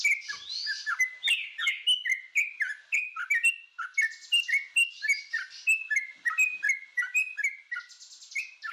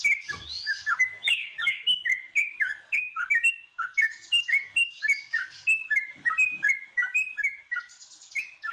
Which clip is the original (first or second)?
first